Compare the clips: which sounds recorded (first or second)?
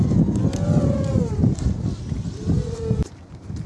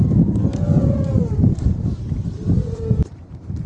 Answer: first